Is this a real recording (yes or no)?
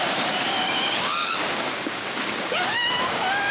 no